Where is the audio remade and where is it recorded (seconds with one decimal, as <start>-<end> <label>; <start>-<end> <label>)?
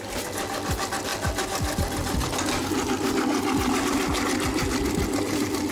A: 0.0-5.7 recorded